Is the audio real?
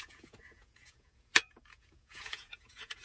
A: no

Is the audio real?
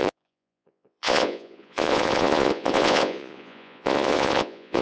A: no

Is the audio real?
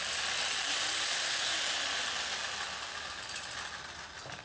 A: yes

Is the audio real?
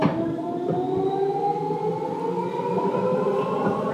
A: yes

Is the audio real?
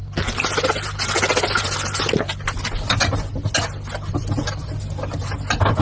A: yes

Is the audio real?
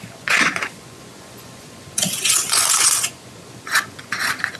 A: no